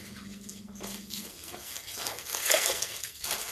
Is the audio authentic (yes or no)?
no